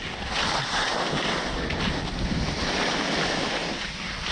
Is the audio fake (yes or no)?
no